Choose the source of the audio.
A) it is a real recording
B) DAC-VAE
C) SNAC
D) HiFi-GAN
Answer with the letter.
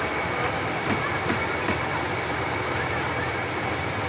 A